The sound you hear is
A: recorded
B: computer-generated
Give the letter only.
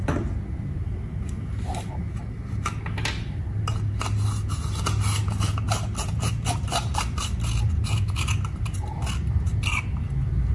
A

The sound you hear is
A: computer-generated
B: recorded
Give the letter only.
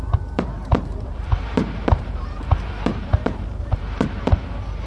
A